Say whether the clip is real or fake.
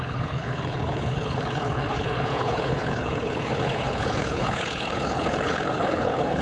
fake